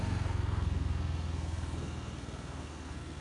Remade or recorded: remade